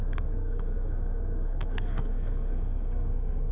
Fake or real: fake